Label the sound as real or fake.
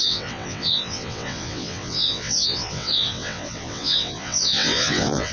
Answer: fake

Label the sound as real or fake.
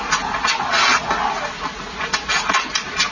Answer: real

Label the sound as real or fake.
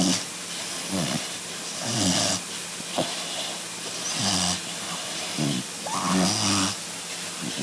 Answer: real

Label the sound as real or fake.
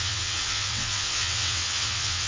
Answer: fake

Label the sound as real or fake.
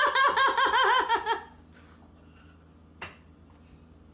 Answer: real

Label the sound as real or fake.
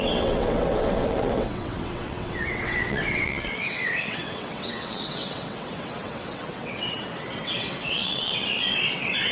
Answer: fake